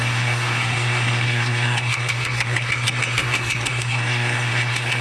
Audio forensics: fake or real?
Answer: fake